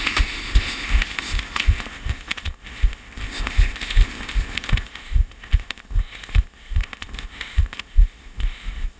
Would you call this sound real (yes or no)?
no